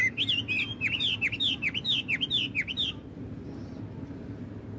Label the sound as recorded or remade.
recorded